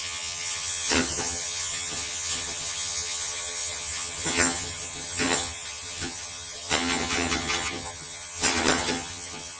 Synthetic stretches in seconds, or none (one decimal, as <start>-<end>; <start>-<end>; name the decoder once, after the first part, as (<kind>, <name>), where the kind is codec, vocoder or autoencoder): 0.0-9.6 (vocoder, HiFi-GAN)